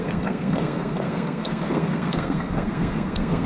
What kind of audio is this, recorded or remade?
remade